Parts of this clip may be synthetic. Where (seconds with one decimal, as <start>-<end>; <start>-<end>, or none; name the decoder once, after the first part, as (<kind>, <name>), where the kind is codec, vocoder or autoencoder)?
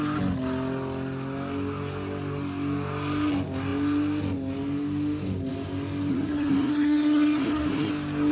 6.1-7.9 (codec, SNAC)